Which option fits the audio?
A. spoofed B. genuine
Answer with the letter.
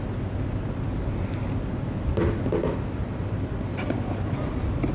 B